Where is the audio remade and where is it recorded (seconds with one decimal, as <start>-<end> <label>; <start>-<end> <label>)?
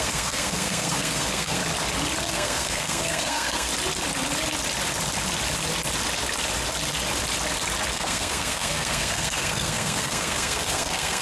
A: 0.0-1.6 remade; 1.6-2.2 recorded; 2.2-3.7 remade; 3.7-7.9 recorded; 7.9-11.2 remade